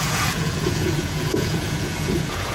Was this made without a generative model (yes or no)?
no